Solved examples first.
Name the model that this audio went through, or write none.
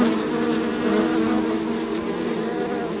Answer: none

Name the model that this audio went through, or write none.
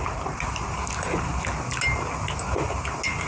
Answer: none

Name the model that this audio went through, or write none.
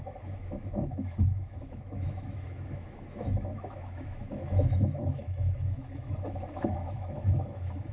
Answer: autoencoder, DAC-VAE